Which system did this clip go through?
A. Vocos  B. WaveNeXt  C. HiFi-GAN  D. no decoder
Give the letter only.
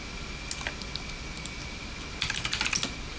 D